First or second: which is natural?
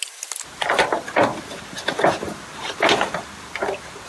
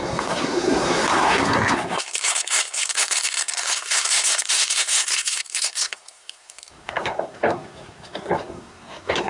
first